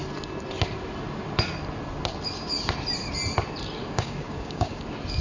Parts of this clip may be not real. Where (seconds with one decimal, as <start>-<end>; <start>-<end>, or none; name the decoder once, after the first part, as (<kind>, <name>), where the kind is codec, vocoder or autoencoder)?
3.8-4.8 (codec, DAC)